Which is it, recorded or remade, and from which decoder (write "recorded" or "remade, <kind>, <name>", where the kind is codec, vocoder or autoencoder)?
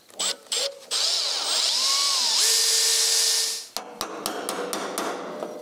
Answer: recorded